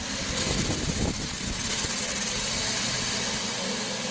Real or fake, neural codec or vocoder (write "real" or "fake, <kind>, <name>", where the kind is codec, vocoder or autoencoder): real